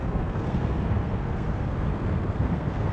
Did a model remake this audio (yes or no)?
yes